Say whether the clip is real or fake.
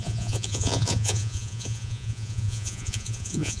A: fake